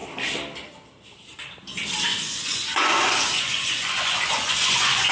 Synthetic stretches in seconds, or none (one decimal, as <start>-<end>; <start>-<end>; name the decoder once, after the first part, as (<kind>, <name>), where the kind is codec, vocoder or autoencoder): 2.1-5.1 (vocoder, Vocos)